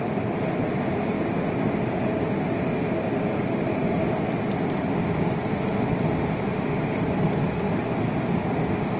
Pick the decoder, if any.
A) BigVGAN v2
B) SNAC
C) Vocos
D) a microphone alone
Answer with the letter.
D